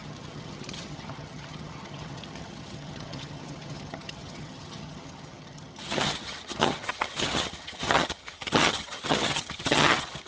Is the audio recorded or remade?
remade